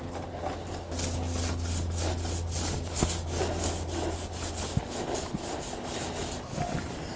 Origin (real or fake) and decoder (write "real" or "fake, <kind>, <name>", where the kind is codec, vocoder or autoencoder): real